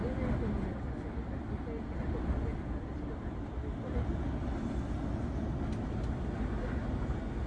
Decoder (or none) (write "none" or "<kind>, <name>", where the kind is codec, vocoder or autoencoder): none